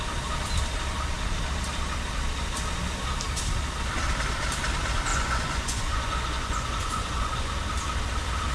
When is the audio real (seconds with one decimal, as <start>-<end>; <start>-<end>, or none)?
0.0-5.1; 7.5-8.5